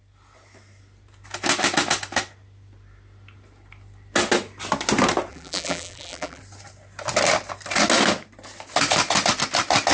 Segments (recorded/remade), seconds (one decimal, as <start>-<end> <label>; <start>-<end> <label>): 0.0-5.3 recorded; 5.3-6.4 remade; 6.4-9.9 recorded